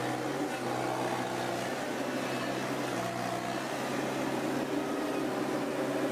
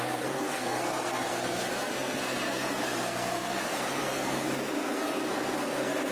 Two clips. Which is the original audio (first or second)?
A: first